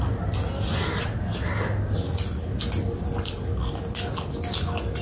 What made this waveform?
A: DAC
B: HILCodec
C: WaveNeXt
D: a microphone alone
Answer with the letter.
D